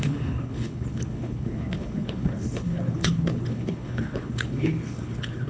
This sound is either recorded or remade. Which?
remade